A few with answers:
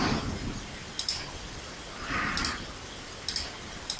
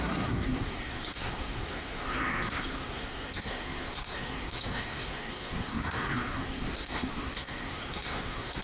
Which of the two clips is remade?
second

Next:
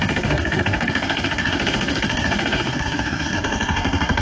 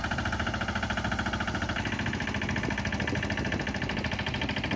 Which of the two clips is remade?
first